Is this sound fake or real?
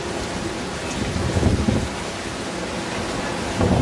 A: real